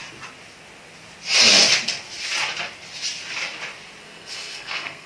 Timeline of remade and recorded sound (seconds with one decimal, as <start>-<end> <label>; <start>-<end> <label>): 0.0-4.0 recorded; 4.0-5.1 remade